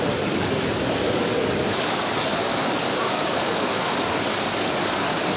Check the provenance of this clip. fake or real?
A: fake